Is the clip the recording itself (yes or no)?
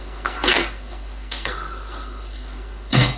no